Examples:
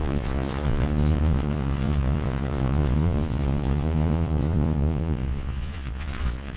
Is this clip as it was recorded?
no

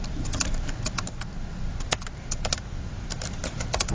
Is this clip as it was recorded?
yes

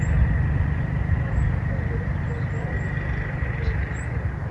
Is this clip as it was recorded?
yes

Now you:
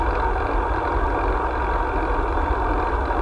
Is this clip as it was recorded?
yes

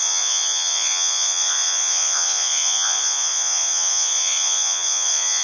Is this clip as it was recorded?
no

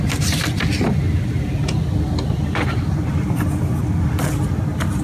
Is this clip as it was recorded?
yes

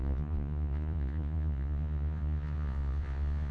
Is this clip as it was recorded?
no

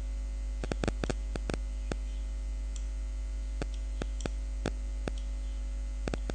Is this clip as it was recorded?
yes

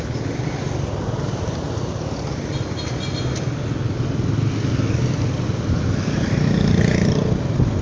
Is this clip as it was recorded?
yes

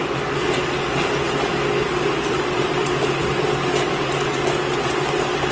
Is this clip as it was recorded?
yes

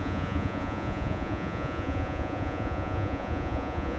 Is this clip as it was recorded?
no